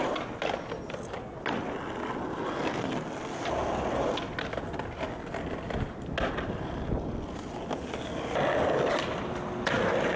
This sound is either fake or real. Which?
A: real